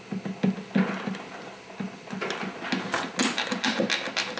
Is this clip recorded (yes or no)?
yes